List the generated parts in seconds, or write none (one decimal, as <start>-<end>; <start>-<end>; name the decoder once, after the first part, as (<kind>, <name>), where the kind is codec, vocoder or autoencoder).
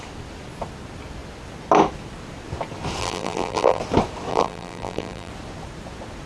3.0-3.8 (vocoder, BigVGAN v2); 4.3-5.3